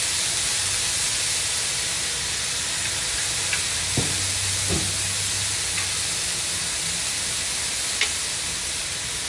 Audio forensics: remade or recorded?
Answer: recorded